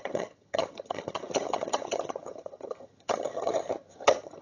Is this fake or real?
fake